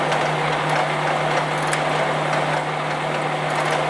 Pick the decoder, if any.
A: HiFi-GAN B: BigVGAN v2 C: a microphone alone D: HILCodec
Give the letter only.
C